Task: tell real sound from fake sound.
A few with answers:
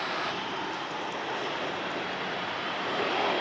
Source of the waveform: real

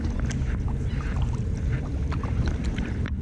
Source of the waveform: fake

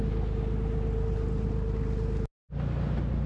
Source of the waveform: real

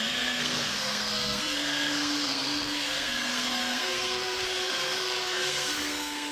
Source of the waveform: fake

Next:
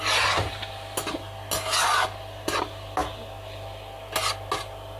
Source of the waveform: real